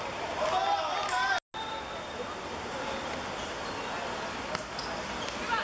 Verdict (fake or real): real